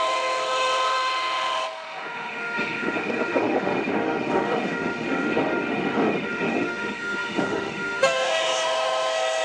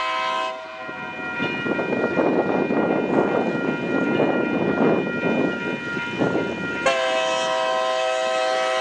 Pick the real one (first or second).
second